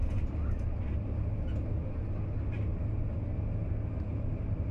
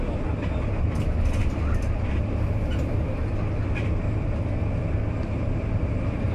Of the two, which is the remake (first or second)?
second